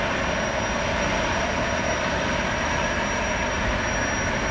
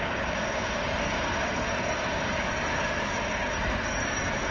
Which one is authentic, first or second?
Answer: first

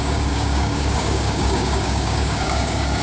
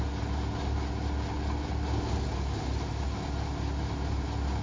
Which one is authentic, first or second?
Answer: second